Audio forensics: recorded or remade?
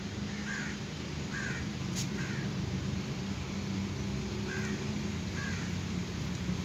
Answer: recorded